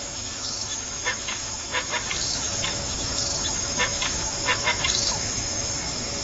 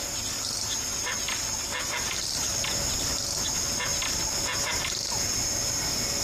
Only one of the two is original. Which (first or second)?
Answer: second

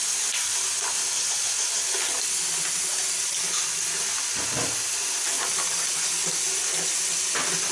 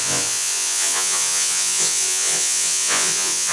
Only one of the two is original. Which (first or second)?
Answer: first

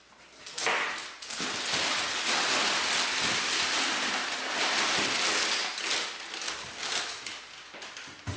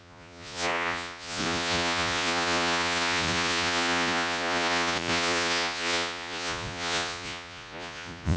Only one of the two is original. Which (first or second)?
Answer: first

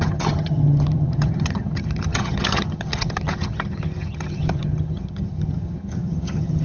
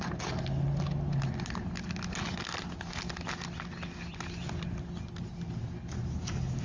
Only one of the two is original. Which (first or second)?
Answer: second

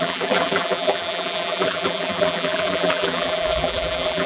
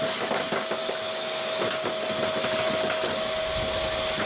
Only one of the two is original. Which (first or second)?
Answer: second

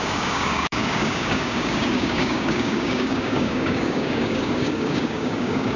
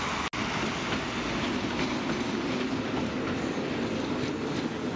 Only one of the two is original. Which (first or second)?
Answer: second